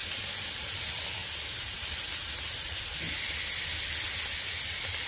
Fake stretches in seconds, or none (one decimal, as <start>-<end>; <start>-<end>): 1.2-2.8